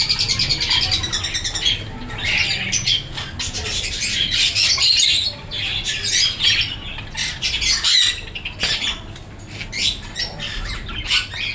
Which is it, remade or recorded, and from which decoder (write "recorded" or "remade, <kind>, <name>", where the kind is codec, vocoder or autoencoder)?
recorded